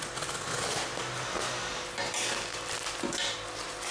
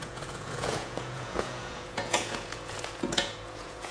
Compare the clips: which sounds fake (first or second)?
second